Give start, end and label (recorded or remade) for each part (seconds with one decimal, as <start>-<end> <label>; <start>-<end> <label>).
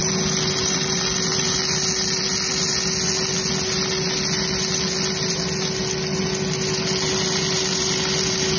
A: 0.0-8.6 recorded